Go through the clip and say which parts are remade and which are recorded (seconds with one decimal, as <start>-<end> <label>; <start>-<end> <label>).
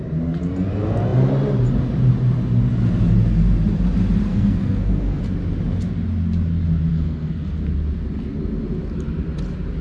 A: 0.0-4.3 recorded; 4.3-5.2 remade; 5.2-6.9 recorded; 6.9-7.6 remade; 7.6-9.8 recorded